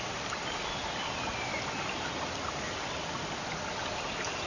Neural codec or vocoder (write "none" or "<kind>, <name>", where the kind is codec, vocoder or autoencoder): none